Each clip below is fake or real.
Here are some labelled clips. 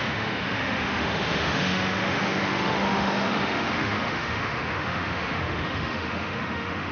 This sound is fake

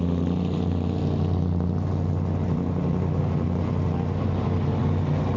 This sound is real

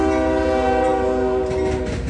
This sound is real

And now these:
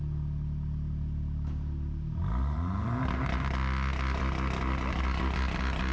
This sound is real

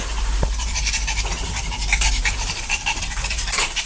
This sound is fake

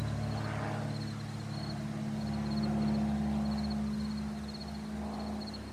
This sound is real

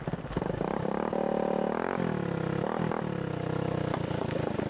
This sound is real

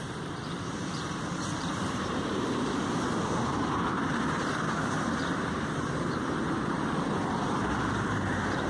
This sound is fake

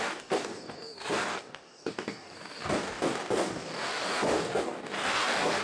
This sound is fake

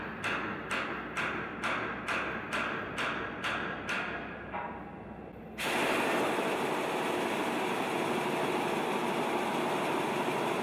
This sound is real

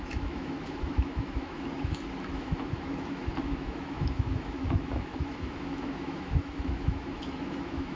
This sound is fake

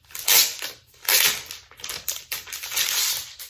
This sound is real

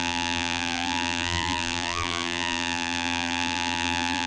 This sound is fake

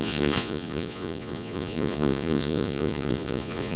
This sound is fake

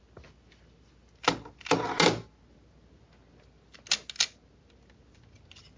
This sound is real